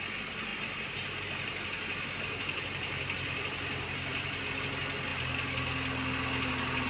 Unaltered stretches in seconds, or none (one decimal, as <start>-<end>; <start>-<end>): 0.0-0.5; 4.4-6.9